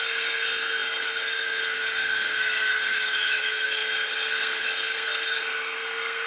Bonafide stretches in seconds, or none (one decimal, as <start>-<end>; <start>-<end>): none

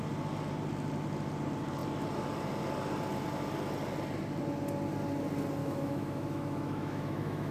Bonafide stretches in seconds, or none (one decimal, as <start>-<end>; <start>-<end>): 0.0-5.6

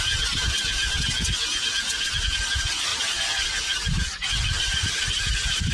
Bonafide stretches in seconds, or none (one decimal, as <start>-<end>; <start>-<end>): 0.0-5.7

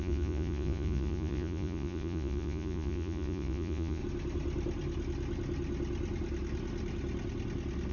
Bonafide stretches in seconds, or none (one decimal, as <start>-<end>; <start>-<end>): 4.0-7.9

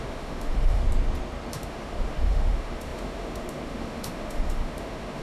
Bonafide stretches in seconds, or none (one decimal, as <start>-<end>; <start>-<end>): 0.8-1.5